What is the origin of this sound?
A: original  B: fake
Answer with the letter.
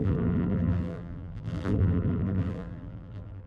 B